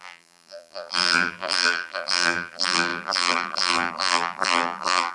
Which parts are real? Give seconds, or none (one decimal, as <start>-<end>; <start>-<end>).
none